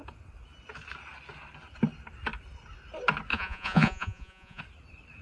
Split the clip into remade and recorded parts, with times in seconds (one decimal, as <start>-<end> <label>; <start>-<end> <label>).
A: 0.0-3.3 recorded; 3.3-4.6 remade; 4.6-5.2 recorded